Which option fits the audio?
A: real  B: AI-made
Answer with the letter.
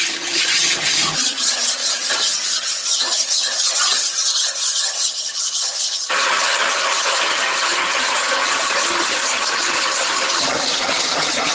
B